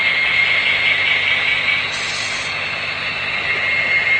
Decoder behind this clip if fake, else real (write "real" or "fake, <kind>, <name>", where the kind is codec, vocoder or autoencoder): real